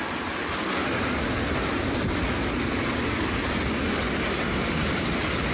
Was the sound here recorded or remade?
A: recorded